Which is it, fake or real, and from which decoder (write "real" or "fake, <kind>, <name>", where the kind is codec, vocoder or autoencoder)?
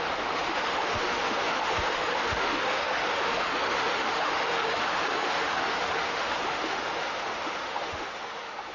fake, autoencoder, DAC-VAE